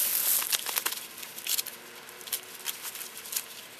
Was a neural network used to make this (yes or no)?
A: no